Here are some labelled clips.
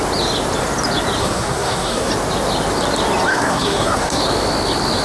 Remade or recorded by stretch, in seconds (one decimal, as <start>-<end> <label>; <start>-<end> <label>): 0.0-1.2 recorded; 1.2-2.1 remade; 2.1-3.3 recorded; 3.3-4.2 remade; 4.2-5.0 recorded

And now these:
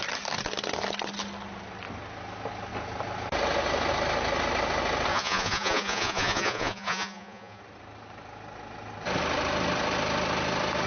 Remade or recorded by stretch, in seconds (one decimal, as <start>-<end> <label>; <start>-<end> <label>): 0.0-5.1 recorded; 5.1-7.6 remade; 7.6-10.9 recorded

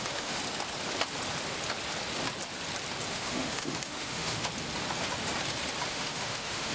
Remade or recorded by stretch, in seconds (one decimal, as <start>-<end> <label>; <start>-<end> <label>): 0.0-0.4 remade; 0.4-3.1 recorded; 3.1-4.5 remade; 4.5-5.9 recorded; 5.9-6.7 remade

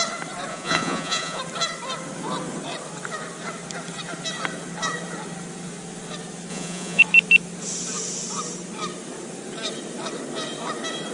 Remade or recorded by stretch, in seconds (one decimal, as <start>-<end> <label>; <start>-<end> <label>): 0.0-0.5 recorded; 0.5-1.4 remade; 1.4-6.5 recorded; 6.5-7.0 remade; 7.0-11.1 recorded